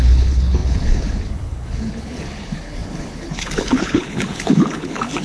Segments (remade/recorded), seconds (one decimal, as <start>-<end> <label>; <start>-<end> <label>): 0.0-5.2 remade